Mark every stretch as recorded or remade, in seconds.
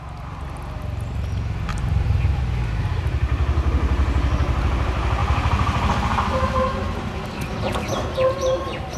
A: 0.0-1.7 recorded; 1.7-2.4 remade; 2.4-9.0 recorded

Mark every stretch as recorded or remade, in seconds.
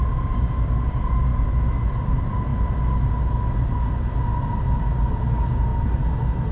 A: 0.0-6.5 recorded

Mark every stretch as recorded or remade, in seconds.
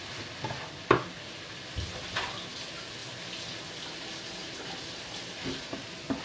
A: 0.0-6.2 recorded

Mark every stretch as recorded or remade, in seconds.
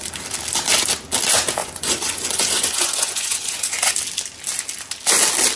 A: 0.0-1.6 recorded; 1.6-3.9 remade; 3.9-5.6 recorded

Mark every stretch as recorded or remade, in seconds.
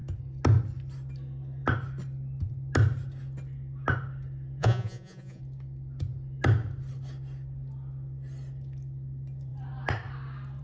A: 0.0-4.6 recorded; 4.6-5.4 remade; 5.4-10.6 recorded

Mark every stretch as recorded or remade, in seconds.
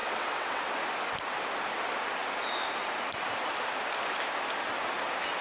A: 0.0-0.7 remade; 0.7-5.4 recorded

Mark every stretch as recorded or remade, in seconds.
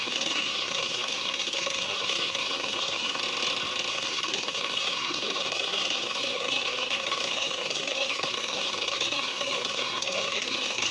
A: 0.0-3.2 remade; 3.2-3.9 recorded; 3.9-10.9 remade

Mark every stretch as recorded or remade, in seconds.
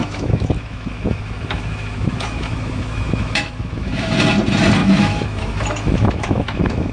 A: 0.0-4.1 remade; 4.1-4.8 recorded; 4.8-6.9 remade